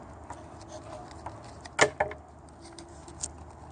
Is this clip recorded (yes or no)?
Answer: yes